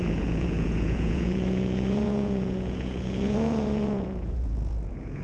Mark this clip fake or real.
fake